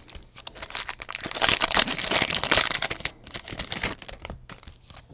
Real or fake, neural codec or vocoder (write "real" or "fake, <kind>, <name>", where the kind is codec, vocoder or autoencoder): real